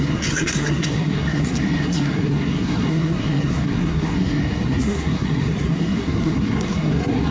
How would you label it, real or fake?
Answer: fake